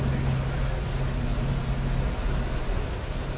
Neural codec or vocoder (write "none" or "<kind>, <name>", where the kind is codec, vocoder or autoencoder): none